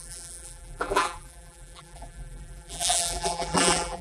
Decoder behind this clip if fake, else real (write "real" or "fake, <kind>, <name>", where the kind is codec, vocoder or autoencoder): fake, vocoder, BigVGAN v2